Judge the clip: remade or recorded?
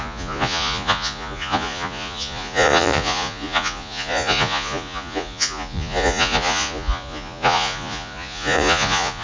remade